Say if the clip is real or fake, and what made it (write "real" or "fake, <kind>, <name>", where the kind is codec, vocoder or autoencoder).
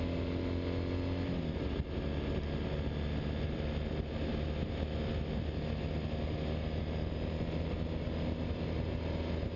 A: real